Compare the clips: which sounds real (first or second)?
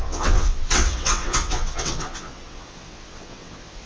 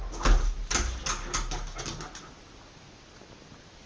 second